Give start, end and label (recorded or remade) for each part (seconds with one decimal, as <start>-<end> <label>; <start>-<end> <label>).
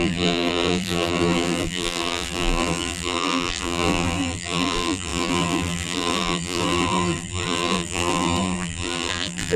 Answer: 0.0-9.6 remade